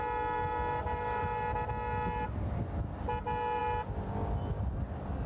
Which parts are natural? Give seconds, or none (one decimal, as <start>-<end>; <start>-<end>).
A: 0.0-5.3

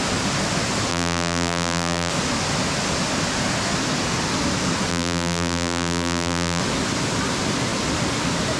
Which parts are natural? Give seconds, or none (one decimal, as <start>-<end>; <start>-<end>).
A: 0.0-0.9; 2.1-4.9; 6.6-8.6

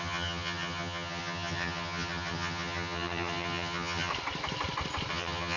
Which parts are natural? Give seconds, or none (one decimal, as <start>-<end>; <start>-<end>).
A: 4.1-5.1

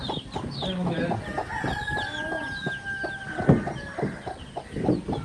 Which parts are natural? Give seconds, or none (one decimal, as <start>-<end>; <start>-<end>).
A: 0.0-5.2